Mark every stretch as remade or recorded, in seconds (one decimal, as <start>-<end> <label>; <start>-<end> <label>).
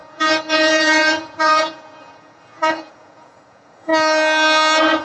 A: 0.0-3.9 remade; 3.9-5.0 recorded